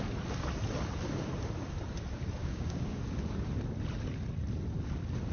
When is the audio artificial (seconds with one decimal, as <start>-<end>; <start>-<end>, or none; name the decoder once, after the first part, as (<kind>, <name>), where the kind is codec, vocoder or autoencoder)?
2.4-3.0 (codec, DAC)